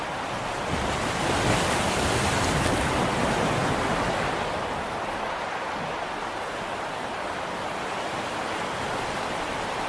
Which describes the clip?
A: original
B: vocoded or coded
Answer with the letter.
A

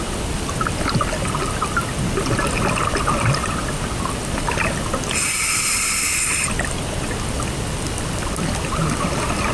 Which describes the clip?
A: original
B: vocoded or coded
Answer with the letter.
A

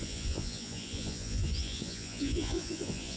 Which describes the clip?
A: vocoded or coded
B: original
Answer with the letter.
A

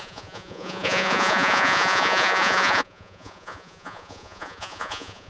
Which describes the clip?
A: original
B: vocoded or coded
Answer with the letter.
B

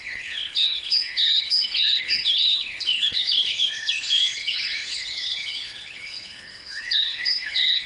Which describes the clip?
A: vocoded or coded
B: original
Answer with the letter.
A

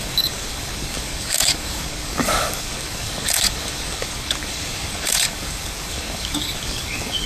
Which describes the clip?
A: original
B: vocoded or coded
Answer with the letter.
B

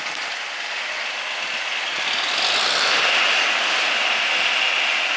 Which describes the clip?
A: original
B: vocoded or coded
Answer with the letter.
A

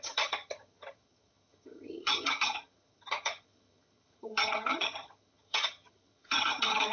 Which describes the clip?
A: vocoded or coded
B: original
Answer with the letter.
A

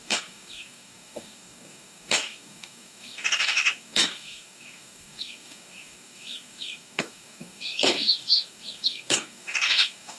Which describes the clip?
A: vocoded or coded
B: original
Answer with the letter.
A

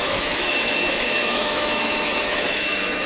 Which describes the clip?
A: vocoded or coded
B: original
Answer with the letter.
A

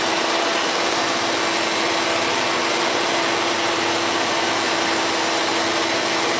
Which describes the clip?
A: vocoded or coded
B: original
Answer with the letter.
B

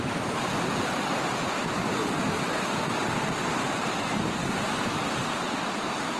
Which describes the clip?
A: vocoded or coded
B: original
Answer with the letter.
A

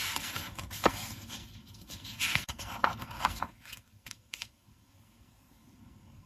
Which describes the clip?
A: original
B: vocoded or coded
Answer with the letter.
B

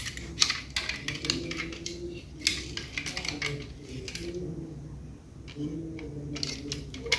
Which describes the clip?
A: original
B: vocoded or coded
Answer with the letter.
A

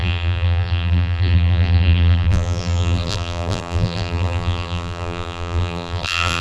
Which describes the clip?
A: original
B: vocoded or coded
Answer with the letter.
B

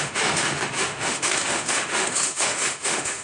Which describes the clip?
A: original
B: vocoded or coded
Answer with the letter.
B